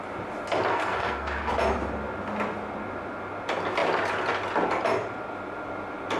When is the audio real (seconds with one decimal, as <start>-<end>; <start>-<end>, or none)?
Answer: 0.0-0.7; 1.5-6.2